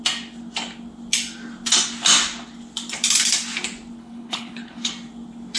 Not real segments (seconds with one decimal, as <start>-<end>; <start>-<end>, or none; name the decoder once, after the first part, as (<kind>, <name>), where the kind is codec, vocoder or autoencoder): 4.0-4.9 (codec, HILCodec)